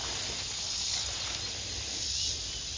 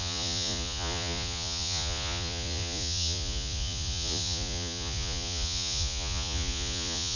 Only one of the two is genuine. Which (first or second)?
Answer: first